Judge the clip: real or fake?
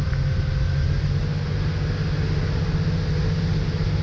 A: real